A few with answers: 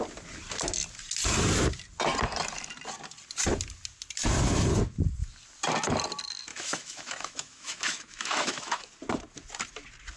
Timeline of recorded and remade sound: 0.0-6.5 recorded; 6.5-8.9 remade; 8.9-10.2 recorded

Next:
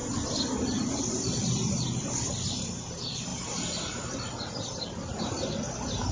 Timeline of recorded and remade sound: 0.0-6.1 recorded

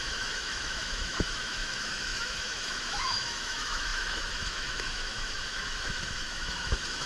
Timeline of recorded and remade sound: 0.0-7.1 remade

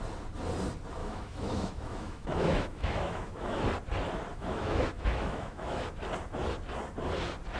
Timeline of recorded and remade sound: 0.0-1.0 recorded; 1.0-3.6 remade; 3.6-4.3 recorded; 4.3-5.9 remade; 5.9-7.6 recorded